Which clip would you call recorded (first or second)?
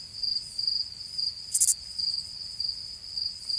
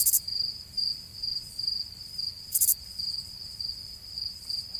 first